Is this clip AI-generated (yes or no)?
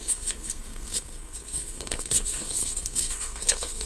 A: yes